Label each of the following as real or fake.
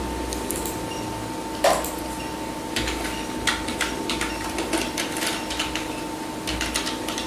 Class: real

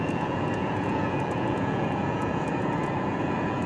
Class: fake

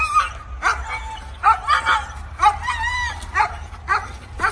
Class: real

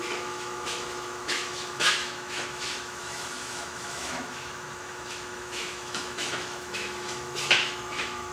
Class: fake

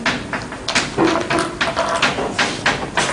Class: real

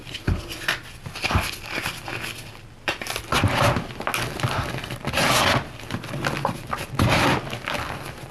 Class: real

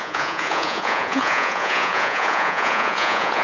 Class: fake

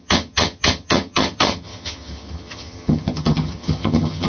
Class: fake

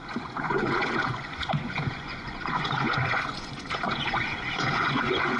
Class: fake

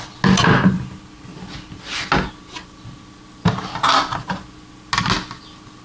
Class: real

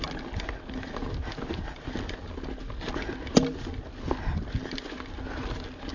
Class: real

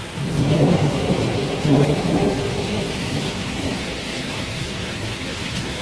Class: fake